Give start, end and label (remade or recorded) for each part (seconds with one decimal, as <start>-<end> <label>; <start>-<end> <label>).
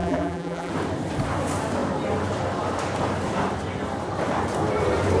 0.0-0.7 remade; 0.7-5.2 recorded